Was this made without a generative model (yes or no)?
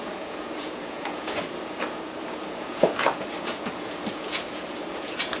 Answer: no